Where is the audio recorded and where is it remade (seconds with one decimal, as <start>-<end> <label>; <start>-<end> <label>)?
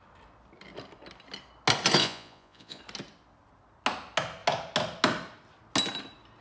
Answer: 0.0-2.0 recorded; 2.0-2.8 remade; 2.8-6.4 recorded